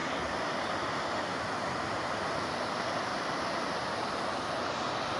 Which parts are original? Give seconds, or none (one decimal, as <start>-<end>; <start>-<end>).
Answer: 0.0-3.1; 3.8-5.2